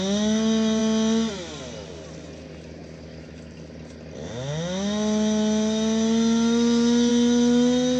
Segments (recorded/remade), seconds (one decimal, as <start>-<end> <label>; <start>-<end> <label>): 0.0-8.0 recorded